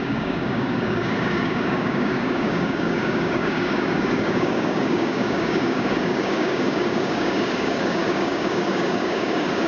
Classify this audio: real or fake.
fake